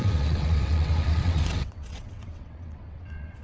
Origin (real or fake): fake